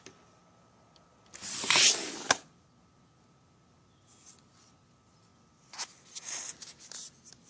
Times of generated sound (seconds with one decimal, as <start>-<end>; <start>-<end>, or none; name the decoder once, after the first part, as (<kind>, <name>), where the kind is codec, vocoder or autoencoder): none